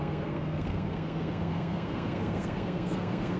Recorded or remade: remade